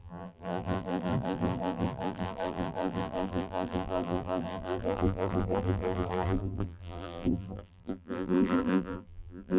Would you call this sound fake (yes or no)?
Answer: yes